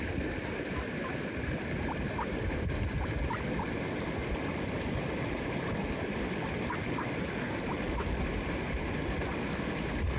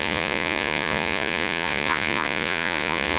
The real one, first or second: first